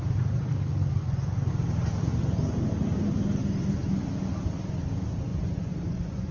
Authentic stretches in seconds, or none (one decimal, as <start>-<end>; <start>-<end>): 0.0-1.0; 1.5-5.3